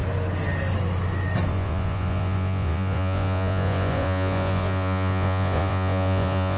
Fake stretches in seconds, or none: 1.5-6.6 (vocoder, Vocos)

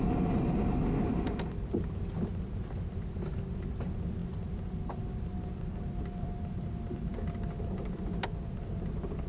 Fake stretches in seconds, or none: none

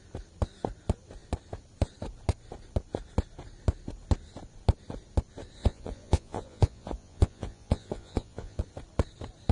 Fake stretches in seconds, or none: 5.6-8.6 (vocoder, Vocos)

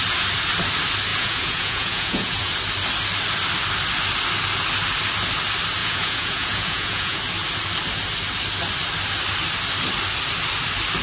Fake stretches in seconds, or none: 1.1-2.5 (vocoder, Vocos); 5.8-7.2

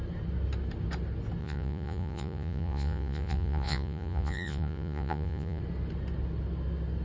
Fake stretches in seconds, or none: 1.4-5.6 (vocoder, Vocos)

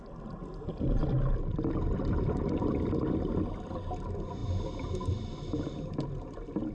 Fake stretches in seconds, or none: none

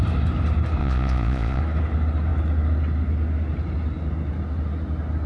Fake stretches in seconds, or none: 0.8-1.6 (vocoder, Vocos)

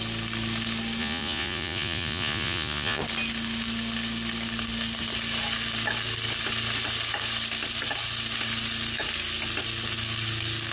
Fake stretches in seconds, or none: 1.0-3.0 (vocoder, Vocos)